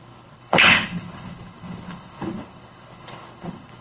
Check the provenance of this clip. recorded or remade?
remade